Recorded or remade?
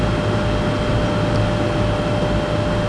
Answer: recorded